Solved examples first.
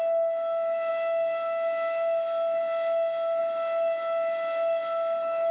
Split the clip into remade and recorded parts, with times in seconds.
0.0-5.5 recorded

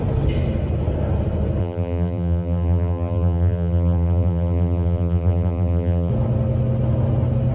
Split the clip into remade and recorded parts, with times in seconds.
0.0-1.6 recorded; 1.6-6.1 remade; 6.1-7.5 recorded